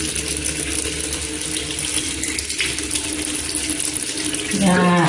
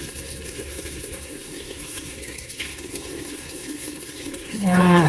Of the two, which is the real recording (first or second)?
first